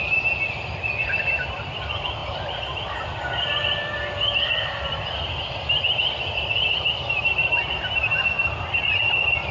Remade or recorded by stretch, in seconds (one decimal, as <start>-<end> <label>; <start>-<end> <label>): 0.0-9.5 recorded